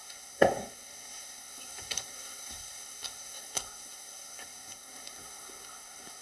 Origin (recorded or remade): remade